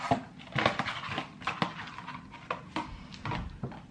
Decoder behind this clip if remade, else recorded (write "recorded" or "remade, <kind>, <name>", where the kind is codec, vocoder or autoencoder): recorded